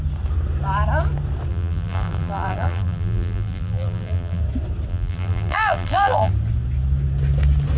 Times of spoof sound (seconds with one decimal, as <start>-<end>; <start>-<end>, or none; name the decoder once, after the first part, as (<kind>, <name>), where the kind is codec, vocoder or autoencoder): 1.5-4.4 (vocoder, BigVGAN v2); 4.9-6.3